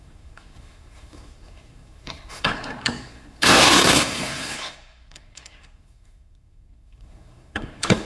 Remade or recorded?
remade